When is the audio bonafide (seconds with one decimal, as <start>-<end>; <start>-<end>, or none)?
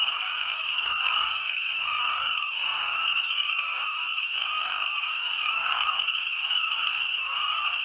none